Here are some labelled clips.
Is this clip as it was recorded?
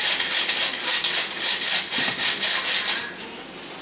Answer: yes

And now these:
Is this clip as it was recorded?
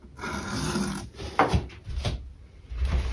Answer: yes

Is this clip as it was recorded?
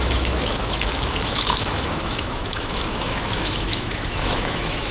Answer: no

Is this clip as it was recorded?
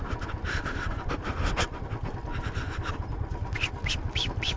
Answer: yes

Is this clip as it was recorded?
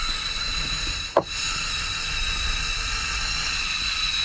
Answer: yes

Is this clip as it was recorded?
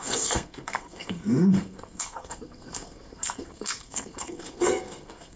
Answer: no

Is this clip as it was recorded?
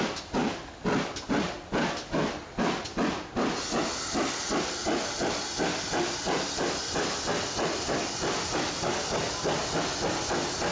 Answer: yes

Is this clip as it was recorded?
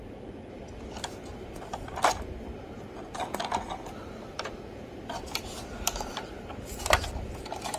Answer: yes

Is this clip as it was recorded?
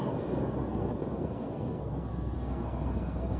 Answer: no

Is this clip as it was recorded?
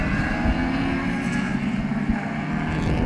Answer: yes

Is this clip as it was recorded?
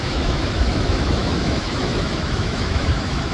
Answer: no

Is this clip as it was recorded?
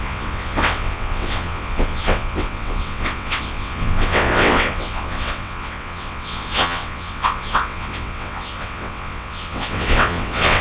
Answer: no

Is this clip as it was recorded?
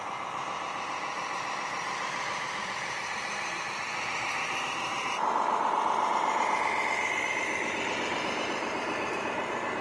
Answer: no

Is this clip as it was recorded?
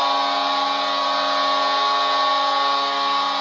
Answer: yes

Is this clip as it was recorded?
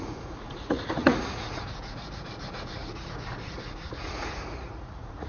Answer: no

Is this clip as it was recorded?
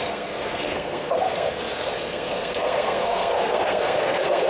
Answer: no